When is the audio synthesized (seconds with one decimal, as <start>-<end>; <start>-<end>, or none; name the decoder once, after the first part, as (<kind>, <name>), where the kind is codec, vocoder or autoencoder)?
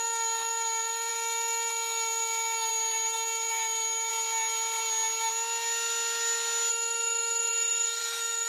0.0-4.1 (autoencoder, DAC-VAE); 6.7-8.5